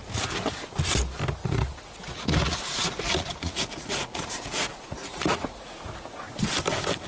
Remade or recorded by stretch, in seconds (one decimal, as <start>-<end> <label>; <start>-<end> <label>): 0.0-1.4 recorded; 1.4-5.7 remade; 5.7-7.1 recorded